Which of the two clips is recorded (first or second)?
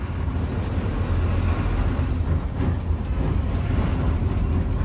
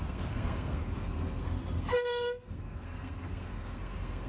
first